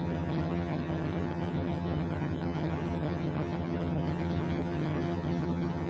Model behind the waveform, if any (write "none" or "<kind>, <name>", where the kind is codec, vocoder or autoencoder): vocoder, HiFi-GAN